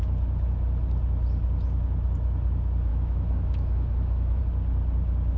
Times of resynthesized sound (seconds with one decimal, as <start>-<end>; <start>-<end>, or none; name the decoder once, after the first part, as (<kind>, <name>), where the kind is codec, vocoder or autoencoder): 2.9-4.4 (autoencoder, DAC-VAE)